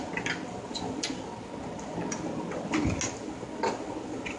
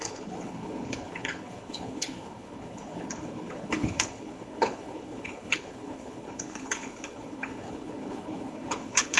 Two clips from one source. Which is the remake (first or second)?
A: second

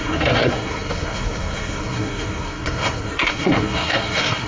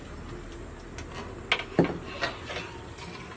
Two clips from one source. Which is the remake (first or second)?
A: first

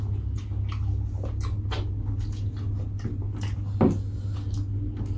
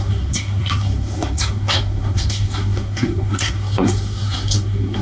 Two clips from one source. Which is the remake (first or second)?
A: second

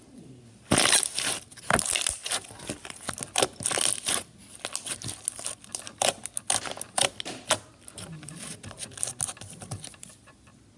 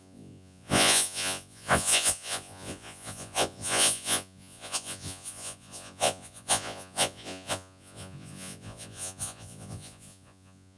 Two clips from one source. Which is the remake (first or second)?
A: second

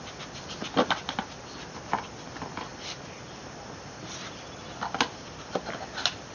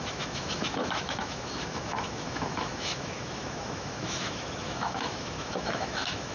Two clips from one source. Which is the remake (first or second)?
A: second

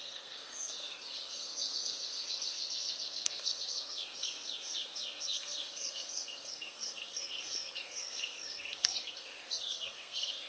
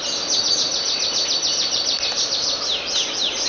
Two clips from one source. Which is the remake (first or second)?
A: first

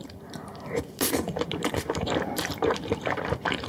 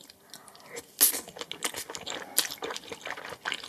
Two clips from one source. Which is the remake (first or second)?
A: first